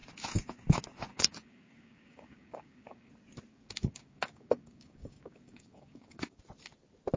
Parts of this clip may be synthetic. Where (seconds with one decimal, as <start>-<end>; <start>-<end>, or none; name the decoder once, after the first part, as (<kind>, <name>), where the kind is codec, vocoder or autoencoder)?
1.1-3.1 (codec, DAC); 3.5-6.4